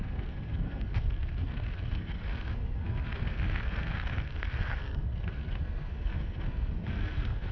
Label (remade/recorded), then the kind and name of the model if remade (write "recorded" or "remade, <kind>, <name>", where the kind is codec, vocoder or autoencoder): remade, codec, SNAC